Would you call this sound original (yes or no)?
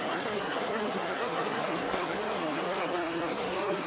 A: no